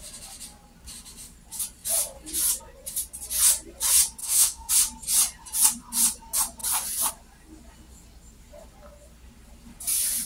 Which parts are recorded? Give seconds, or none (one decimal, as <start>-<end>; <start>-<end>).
0.0-4.2; 4.7-10.3